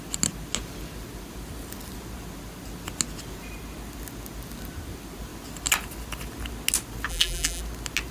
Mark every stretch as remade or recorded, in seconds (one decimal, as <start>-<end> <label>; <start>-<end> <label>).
0.0-7.1 recorded; 7.1-7.6 remade; 7.6-8.1 recorded